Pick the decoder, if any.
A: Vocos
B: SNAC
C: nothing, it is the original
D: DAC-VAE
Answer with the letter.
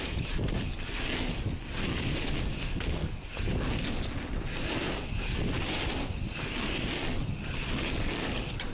C